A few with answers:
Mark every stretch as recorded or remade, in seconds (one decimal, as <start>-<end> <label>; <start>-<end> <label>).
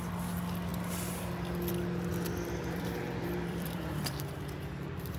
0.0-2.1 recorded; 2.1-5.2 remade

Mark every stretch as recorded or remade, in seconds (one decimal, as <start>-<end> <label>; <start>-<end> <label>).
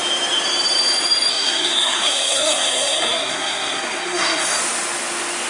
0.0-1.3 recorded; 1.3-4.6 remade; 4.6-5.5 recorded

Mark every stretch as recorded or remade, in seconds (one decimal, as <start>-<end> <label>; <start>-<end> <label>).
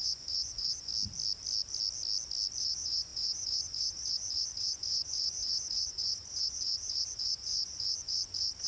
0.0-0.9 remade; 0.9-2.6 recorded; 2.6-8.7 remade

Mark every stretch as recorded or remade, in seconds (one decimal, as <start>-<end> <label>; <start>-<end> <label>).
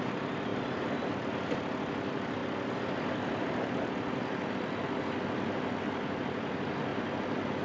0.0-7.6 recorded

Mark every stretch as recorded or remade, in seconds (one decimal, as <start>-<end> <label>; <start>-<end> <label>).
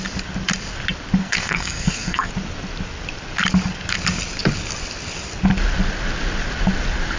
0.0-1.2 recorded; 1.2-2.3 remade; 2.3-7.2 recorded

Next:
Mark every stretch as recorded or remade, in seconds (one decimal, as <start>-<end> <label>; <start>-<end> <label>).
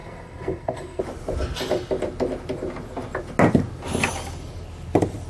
0.0-1.0 remade; 1.0-5.3 recorded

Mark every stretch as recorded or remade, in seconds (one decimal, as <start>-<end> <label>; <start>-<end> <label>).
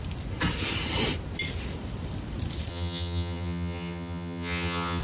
0.0-2.7 recorded; 2.7-5.0 remade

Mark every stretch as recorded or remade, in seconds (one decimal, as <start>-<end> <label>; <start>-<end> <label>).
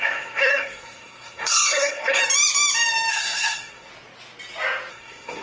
0.0-2.2 remade; 2.2-3.1 recorded; 3.1-3.9 remade; 3.9-4.9 recorded; 4.9-5.4 remade